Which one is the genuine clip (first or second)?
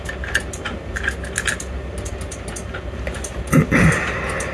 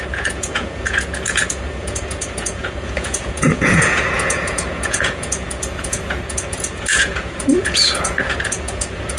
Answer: first